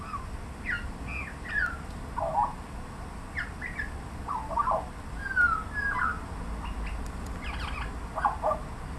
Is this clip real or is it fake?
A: real